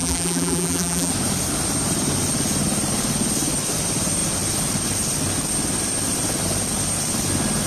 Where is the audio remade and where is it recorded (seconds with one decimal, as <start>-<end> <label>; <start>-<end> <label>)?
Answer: 0.0-1.1 remade; 1.1-7.7 recorded

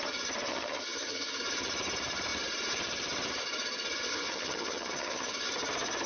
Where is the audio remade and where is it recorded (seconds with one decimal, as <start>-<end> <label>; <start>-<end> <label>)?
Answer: 0.0-0.5 recorded; 0.5-1.4 remade; 1.4-4.1 recorded; 4.1-5.3 remade; 5.3-6.1 recorded

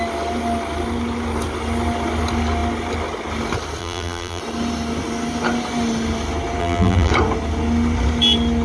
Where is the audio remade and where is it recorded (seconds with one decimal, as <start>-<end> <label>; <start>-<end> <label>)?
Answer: 0.0-3.8 recorded; 3.8-4.4 remade; 4.4-6.6 recorded; 6.6-7.1 remade; 7.1-8.6 recorded

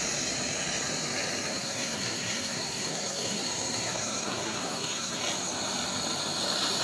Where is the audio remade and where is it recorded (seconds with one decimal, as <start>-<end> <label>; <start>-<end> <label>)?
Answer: 0.0-1.5 recorded; 1.5-5.2 remade; 5.2-6.8 recorded

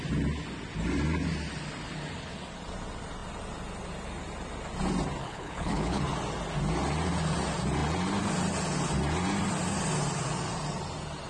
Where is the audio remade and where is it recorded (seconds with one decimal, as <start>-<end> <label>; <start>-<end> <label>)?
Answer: 0.0-5.2 recorded; 5.2-6.0 remade; 6.0-11.3 recorded